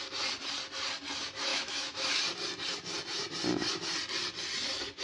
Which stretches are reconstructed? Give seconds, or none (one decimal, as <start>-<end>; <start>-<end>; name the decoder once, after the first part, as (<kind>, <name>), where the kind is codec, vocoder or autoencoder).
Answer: 1.5-2.2 (autoencoder, DAC-VAE)